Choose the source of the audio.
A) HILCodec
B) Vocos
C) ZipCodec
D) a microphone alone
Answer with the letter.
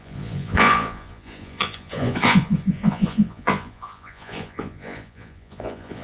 B